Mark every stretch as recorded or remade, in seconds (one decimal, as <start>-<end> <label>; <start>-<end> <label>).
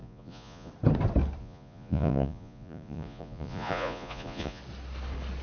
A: 0.0-0.7 remade; 0.7-1.4 recorded; 1.4-4.6 remade; 4.6-5.4 recorded